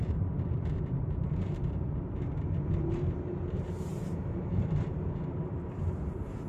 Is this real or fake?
fake